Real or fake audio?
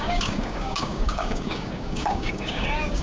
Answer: fake